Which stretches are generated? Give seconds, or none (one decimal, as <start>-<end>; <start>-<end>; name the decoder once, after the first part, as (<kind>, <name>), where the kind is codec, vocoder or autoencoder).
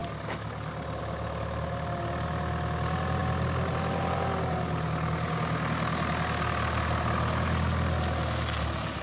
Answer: none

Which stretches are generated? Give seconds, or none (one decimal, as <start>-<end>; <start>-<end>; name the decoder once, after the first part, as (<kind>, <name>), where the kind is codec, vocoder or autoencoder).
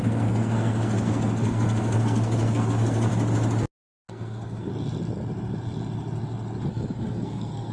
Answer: 0.0-3.1 (codec, SNAC); 3.8-4.7; 6.7-7.7